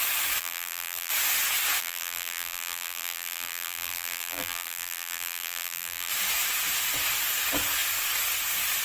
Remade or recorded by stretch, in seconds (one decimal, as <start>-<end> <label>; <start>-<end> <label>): 0.0-0.4 recorded; 0.4-1.1 remade; 1.1-1.8 recorded; 1.8-6.1 remade; 6.1-8.8 recorded